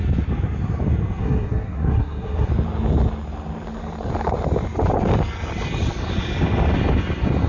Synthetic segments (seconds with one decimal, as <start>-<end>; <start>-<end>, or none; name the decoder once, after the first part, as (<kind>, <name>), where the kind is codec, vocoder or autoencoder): 1.2-2.5 (codec, SNAC)